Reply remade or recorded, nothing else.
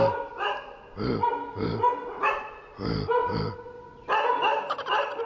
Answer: recorded